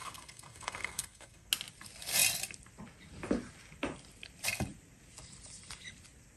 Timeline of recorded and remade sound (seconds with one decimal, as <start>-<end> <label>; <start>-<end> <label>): 0.0-1.5 remade; 1.5-6.4 recorded